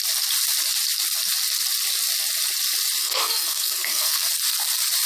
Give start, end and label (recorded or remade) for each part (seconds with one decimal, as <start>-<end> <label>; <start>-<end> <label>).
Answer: 0.0-3.0 recorded; 3.0-4.3 remade; 4.3-5.1 recorded